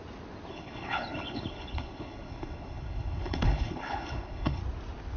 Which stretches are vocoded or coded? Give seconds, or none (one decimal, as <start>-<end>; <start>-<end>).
0.5-4.6